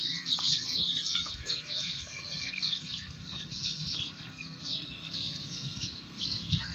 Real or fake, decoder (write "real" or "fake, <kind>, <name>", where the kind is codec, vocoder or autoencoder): fake, codec, SNAC